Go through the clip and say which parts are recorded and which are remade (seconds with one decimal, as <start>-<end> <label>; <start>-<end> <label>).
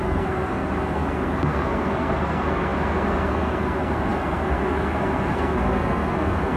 0.0-6.6 remade